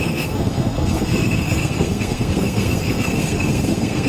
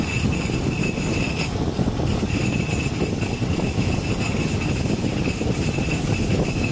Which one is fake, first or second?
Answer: first